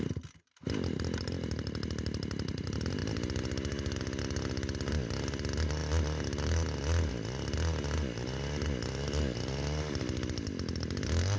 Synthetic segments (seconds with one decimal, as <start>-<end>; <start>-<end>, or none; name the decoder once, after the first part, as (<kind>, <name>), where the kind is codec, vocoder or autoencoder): none